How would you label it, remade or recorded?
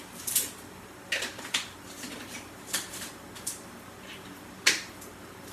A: recorded